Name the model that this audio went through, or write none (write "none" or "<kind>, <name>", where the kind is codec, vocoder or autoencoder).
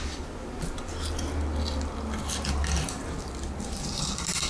none